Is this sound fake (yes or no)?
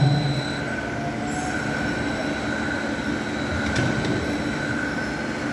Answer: no